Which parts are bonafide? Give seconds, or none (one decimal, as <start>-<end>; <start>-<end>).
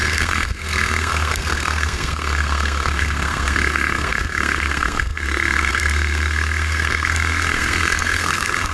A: none